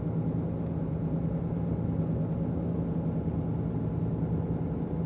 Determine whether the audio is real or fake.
real